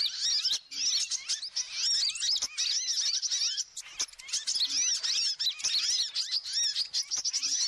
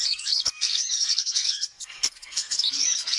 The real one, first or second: first